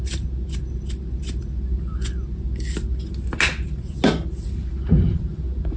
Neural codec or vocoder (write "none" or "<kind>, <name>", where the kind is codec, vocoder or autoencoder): none